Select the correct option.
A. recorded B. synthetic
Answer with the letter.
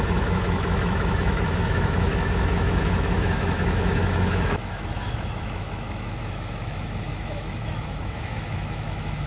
B